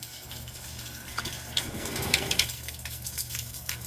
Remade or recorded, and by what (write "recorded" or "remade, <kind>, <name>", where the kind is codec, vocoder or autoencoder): remade, codec, SNAC